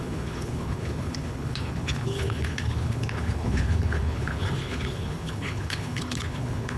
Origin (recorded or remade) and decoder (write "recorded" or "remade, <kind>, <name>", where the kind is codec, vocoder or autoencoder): remade, codec, HILCodec